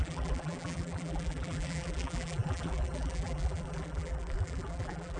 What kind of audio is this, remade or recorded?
remade